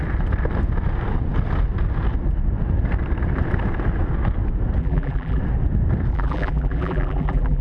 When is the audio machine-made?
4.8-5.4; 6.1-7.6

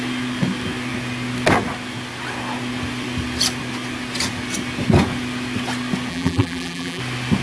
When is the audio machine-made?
6.1-7.0

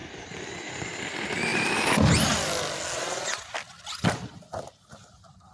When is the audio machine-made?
none